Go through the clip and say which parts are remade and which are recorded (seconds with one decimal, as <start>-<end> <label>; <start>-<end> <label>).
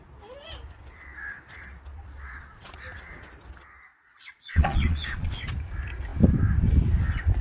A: 0.0-1.9 recorded; 1.9-2.7 remade; 2.7-3.9 recorded; 3.9-5.3 remade; 5.3-7.4 recorded